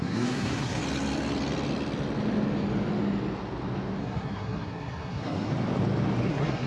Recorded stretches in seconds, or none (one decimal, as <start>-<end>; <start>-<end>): 0.8-4.0; 5.5-6.3